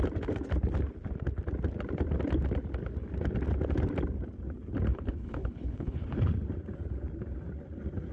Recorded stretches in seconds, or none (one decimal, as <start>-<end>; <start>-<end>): 0.0-4.9; 6.0-8.1